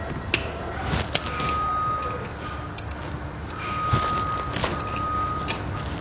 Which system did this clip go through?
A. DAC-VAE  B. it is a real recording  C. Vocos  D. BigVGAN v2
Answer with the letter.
B